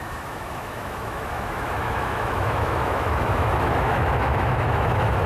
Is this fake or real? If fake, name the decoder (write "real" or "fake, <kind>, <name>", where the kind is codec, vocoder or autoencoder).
fake, autoencoder, DAC-VAE